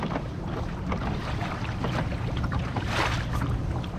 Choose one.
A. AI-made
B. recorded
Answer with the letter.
A